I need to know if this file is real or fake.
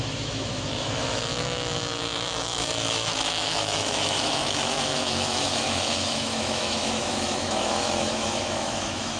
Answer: fake